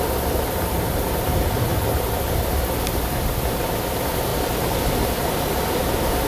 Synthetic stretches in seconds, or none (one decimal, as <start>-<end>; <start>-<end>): 0.0-1.7; 2.8-4.3; 5.1-6.3